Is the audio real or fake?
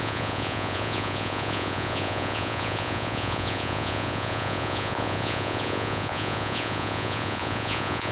fake